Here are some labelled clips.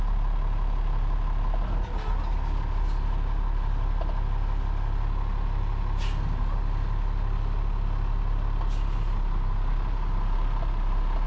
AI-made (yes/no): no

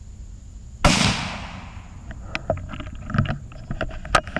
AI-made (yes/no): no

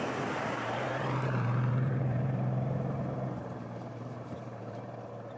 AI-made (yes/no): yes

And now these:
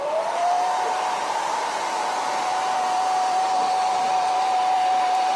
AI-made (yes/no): yes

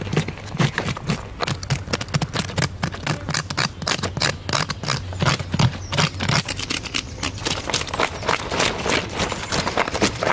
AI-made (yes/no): no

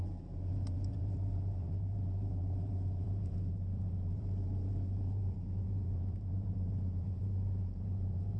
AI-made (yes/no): yes